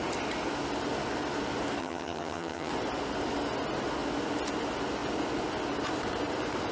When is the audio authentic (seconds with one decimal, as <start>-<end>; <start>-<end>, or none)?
0.0-1.8; 2.7-6.7